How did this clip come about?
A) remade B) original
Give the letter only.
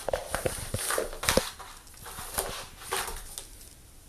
B